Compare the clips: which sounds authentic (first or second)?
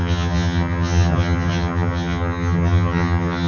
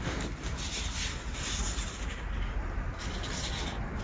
second